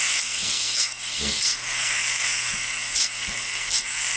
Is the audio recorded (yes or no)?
no